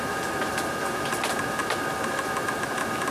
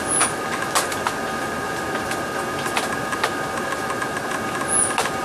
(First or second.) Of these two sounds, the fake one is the first